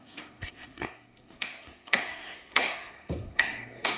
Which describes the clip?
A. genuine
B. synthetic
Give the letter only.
B